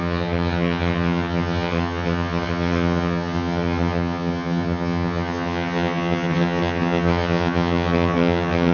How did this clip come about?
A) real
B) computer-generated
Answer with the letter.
B